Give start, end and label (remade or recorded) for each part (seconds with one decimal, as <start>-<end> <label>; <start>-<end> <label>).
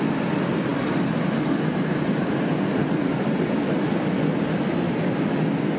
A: 0.0-5.8 recorded